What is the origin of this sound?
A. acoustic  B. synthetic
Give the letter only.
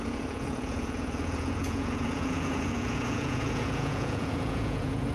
B